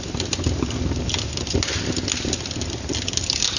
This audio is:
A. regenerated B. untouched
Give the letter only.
B